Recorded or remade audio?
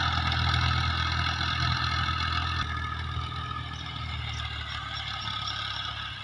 recorded